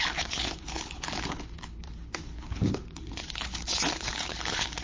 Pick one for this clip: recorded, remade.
remade